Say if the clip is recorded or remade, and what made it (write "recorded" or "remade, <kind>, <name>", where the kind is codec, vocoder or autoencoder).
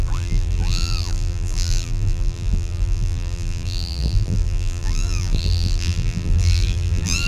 remade, vocoder, BigVGAN v2